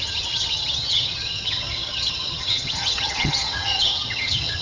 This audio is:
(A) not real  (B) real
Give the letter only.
A